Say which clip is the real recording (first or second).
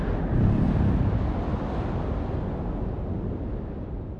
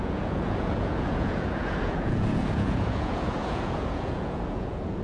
first